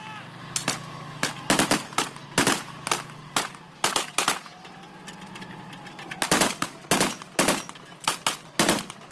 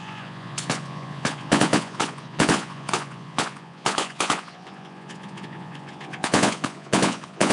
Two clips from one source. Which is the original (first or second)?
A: first